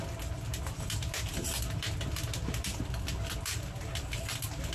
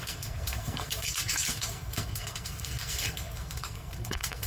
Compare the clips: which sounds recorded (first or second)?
first